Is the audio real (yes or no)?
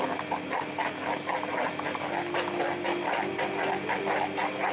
yes